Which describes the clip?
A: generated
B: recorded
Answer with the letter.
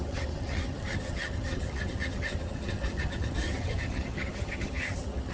A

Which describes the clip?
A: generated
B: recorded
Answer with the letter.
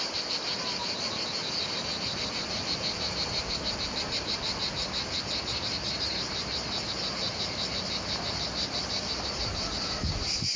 B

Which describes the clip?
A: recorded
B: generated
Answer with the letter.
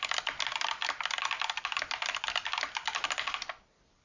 A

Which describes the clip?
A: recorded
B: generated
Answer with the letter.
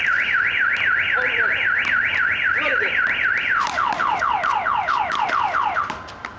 A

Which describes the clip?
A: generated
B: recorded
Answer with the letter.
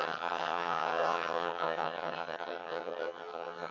A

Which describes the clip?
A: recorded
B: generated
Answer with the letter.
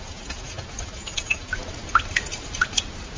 A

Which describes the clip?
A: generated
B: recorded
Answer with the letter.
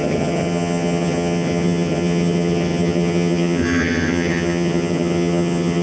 A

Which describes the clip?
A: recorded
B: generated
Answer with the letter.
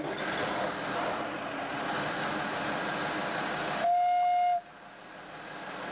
A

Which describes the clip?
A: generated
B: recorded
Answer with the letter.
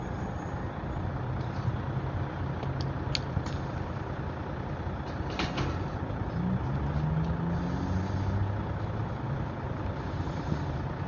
B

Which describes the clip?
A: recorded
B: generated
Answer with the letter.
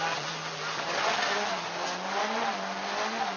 A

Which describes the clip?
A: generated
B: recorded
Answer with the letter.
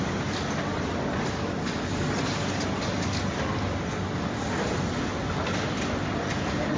B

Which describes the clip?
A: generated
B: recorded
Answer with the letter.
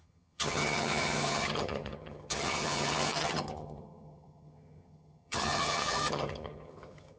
A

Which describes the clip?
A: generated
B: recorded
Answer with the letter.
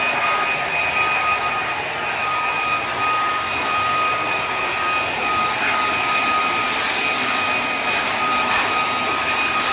B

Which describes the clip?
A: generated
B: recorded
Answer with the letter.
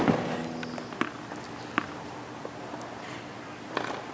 B